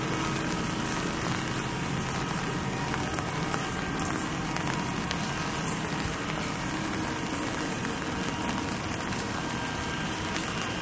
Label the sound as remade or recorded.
recorded